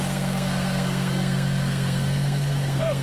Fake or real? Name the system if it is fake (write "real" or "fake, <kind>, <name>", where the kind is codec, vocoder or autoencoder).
fake, codec, SNAC